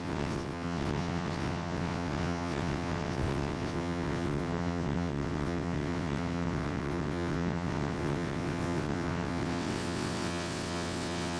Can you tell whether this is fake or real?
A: fake